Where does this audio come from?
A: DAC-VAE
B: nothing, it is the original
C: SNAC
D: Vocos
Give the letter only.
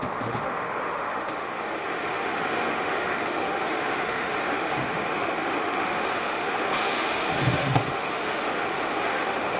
A